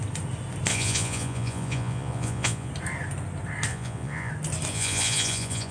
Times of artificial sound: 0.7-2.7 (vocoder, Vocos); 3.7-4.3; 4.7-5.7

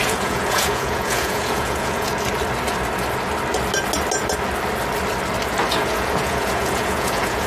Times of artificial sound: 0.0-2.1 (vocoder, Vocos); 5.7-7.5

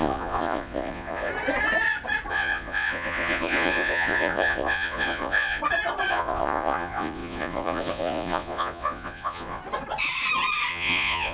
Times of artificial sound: 0.0-1.3 (vocoder, Vocos); 2.3-5.6; 6.1-9.6; 10.7-11.3

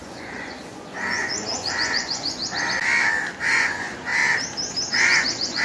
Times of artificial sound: 0.0-2.4 (vocoder, Vocos); 3.5-4.1; 4.9-5.6

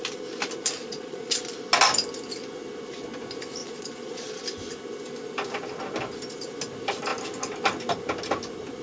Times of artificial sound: 0.8-1.5 (vocoder, Vocos); 3.6-4.4

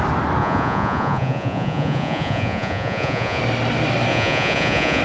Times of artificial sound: 0.4-3.4 (vocoder, Vocos); 4.1-5.0

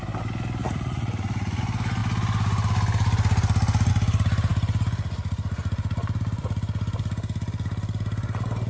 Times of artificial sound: 0.6-1.6 (vocoder, Vocos)

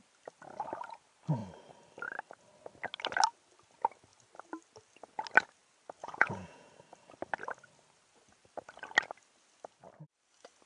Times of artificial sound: 6.0-6.7 (vocoder, Vocos)